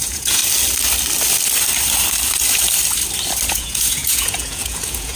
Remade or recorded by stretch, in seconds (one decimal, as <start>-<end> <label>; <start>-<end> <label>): 0.0-0.4 remade; 0.4-3.5 recorded; 3.5-5.2 remade